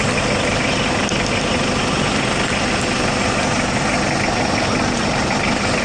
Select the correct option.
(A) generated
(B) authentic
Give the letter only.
B